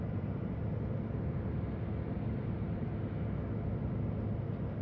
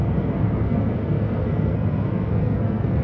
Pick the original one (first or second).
first